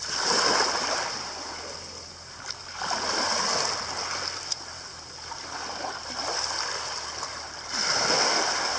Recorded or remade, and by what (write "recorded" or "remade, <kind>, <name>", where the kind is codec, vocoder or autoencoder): recorded